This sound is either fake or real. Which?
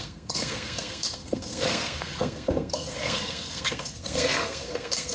fake